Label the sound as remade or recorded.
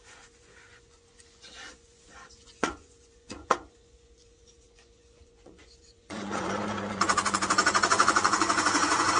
remade